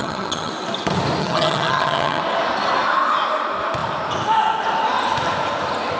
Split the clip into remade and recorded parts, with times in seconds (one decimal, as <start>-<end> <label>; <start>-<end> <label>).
0.0-0.5 remade; 0.5-1.2 recorded; 1.2-2.2 remade; 2.2-6.0 recorded